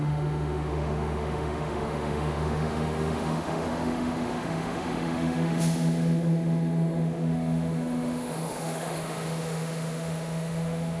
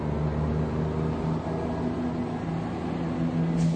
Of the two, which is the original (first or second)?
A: second